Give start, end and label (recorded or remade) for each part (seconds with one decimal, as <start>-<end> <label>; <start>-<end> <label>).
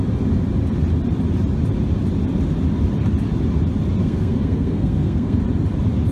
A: 0.0-4.0 recorded; 4.0-5.4 remade; 5.4-6.1 recorded